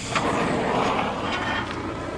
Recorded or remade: recorded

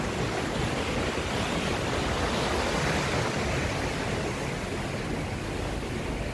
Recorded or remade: recorded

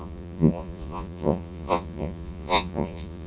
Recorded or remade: remade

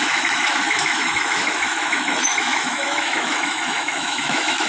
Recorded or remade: remade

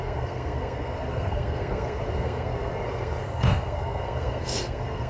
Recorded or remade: remade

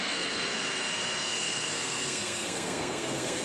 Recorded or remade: remade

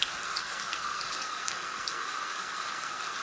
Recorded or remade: remade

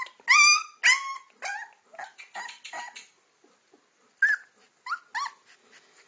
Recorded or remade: recorded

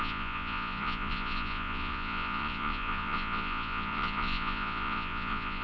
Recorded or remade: remade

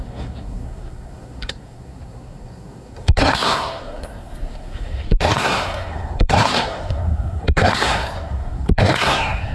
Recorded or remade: remade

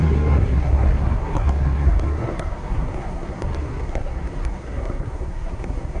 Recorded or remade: remade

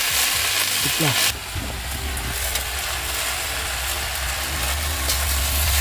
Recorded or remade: recorded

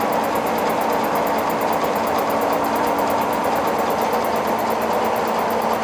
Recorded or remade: recorded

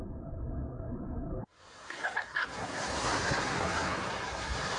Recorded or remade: remade